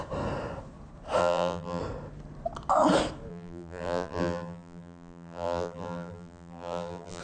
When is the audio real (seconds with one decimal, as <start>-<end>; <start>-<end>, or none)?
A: 0.0-1.2; 1.8-3.3